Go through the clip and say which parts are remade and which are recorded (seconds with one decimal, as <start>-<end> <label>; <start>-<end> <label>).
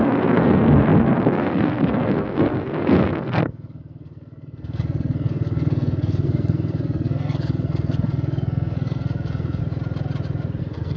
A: 0.0-9.6 remade; 9.6-10.6 recorded; 10.6-11.0 remade